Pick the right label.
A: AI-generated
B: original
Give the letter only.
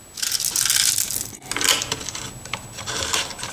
B